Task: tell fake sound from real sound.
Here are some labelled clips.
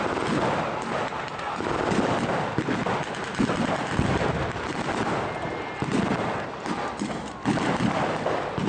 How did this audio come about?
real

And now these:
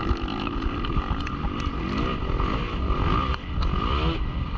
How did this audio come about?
real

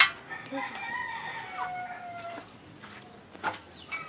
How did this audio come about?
real